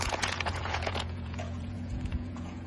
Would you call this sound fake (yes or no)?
yes